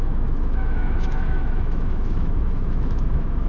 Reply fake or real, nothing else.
fake